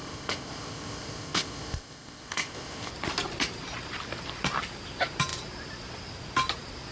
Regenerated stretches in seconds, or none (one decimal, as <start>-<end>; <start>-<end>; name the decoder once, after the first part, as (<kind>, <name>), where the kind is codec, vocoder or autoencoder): 0.0-2.9 (codec, ZipCodec)